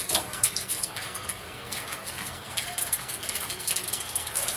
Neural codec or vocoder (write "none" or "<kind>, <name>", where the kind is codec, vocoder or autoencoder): codec, SNAC